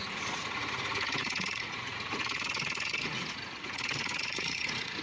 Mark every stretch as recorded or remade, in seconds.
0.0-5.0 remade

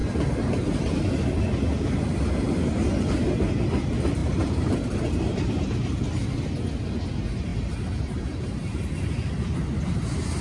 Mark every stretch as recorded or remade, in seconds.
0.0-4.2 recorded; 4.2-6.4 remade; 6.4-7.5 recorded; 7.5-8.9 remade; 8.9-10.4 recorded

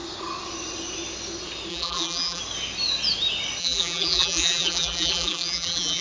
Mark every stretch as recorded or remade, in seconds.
0.0-1.7 recorded; 1.7-2.4 remade; 2.4-3.6 recorded; 3.6-6.0 remade